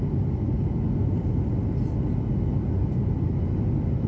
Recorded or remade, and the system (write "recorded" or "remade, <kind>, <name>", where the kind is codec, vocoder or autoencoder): recorded